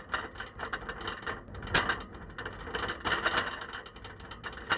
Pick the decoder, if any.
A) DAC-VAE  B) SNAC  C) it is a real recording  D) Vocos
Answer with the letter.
C